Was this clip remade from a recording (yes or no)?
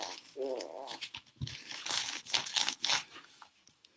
yes